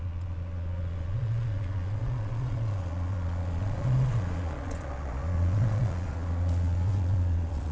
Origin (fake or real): fake